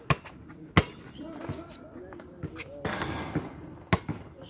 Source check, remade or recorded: recorded